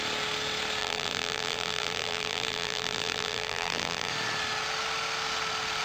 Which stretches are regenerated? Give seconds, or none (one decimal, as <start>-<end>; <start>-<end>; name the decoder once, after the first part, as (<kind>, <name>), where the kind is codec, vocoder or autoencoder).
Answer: 0.8-4.1 (vocoder, BigVGAN v2)